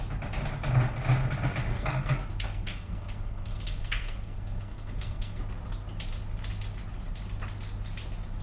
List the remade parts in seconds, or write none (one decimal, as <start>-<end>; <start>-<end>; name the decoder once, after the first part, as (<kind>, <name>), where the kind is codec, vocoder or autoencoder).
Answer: 1.7-5.4 (codec, SNAC)